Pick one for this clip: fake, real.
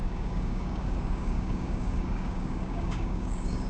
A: fake